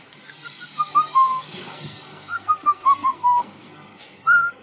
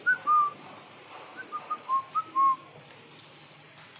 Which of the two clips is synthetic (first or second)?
first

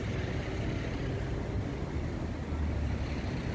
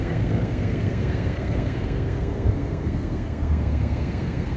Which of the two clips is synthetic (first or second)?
second